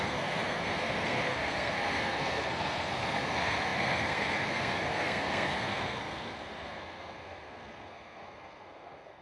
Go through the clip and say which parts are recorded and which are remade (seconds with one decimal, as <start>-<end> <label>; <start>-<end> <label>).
0.0-9.2 remade